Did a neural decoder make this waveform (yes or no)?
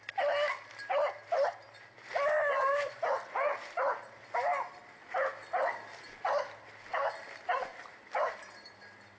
no